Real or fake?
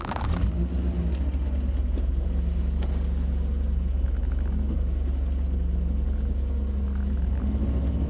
real